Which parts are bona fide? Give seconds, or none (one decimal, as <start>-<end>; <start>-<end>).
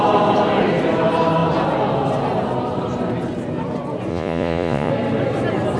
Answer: 0.0-4.1; 4.9-5.8